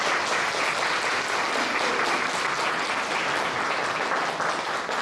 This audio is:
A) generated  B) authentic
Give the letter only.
B